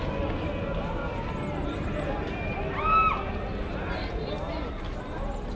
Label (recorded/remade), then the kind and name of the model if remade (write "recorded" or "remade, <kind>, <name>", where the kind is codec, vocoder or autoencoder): recorded